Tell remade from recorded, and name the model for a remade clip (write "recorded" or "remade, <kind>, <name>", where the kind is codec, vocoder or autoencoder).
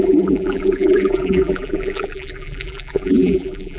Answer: remade, vocoder, BigVGAN v2